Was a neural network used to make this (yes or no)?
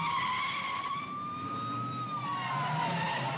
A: no